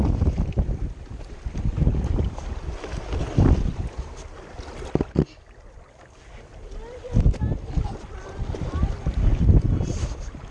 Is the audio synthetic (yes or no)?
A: no